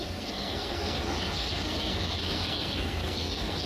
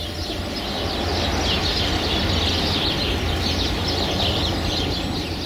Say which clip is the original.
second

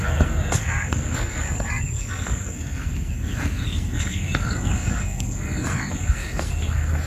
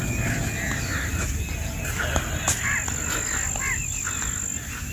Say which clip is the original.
second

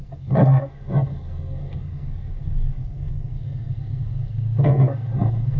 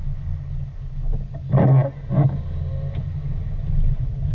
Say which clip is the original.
second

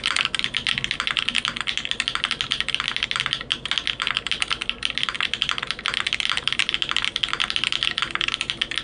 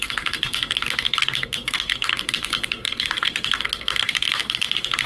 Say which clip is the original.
first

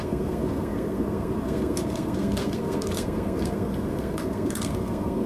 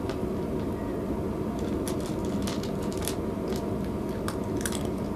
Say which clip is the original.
second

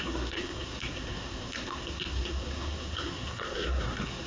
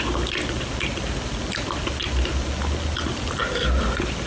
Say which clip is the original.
second